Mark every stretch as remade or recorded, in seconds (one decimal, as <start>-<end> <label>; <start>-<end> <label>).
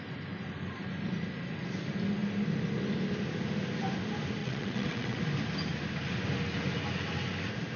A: 0.0-4.4 recorded; 4.4-5.2 remade; 5.2-7.8 recorded